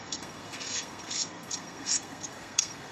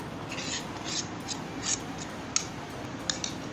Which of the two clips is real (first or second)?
second